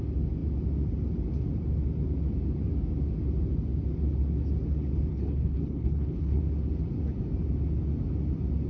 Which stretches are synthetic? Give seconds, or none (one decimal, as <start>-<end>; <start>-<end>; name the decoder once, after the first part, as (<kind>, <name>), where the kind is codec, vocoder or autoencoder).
5.1-6.4 (codec, HILCodec)

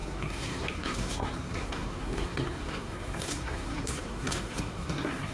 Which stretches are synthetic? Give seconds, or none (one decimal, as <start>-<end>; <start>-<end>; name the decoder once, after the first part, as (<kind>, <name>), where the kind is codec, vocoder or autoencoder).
0.0-5.3 (codec, SNAC)

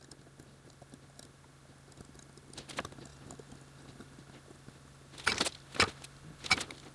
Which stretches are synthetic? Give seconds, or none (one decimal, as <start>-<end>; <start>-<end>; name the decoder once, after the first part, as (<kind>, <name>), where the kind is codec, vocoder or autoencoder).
none

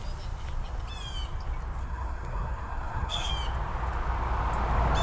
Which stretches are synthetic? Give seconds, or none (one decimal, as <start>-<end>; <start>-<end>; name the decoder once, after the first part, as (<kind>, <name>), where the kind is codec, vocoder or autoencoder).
1.8-3.3 (codec, SNAC)

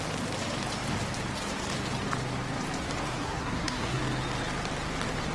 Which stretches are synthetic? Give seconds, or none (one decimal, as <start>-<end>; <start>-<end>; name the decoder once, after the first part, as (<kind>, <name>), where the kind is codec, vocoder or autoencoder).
3.1-4.0 (codec, SNAC)